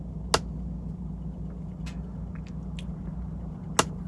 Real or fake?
real